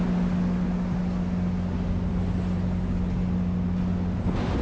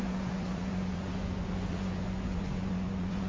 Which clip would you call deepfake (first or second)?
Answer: second